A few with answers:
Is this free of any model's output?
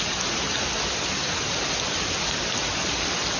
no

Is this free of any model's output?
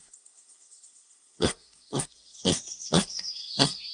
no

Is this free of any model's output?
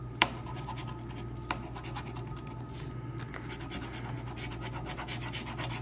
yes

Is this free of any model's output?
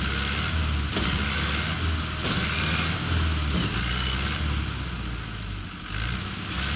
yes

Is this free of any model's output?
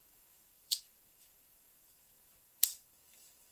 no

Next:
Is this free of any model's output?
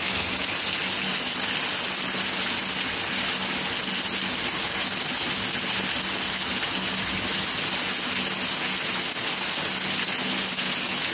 yes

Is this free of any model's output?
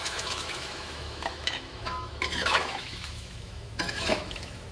no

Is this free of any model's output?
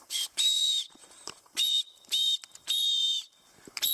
no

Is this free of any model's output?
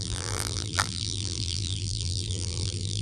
no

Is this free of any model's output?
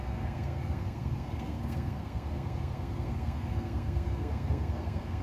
no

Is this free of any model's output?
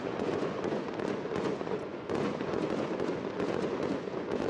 no